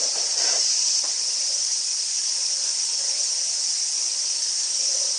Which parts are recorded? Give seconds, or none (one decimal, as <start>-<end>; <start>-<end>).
1.3-5.2